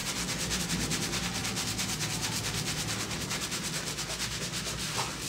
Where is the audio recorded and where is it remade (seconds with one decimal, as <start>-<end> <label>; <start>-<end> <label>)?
0.0-5.3 recorded